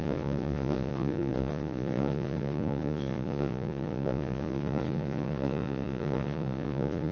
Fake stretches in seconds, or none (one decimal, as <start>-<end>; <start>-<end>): 0.0-7.1